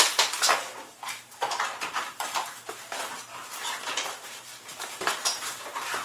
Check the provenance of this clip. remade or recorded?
remade